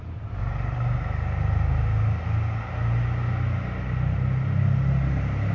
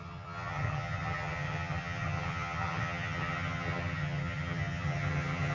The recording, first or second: first